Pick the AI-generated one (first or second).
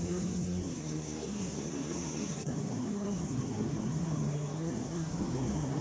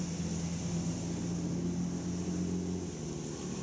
first